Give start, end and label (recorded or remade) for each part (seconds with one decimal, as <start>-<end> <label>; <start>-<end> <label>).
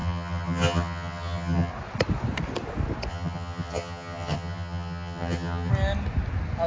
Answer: 0.0-1.7 remade; 1.7-3.1 recorded; 3.1-5.7 remade; 5.7-6.7 recorded